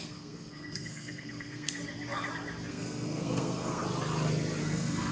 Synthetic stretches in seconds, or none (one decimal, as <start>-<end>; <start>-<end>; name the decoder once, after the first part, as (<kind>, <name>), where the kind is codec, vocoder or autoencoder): 0.0-1.8 (codec, SNAC); 2.7-3.8; 4.6-5.1

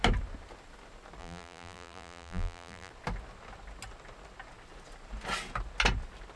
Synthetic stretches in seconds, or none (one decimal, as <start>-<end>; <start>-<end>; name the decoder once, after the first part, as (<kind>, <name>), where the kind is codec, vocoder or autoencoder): 1.2-2.9 (vocoder, BigVGAN v2)

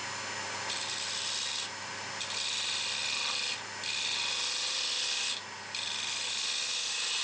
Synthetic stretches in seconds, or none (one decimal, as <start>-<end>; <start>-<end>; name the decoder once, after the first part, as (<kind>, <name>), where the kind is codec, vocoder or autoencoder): none

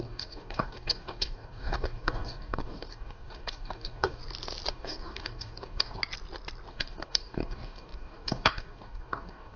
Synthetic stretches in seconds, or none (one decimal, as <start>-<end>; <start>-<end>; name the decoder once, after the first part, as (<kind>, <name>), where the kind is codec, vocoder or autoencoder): 0.0-4.2 (codec, DAC); 4.7-6.0; 6.7-9.6